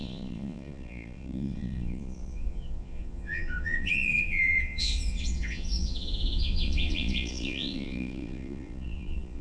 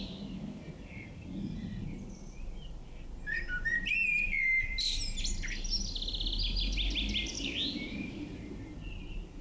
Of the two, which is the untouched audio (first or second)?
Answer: second